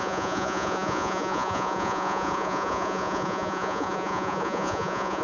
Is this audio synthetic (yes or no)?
yes